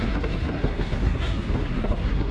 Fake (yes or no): yes